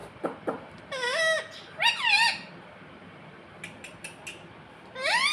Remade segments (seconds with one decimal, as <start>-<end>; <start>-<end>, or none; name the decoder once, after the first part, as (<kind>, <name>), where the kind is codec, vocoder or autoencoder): none